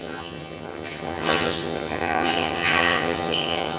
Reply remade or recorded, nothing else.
remade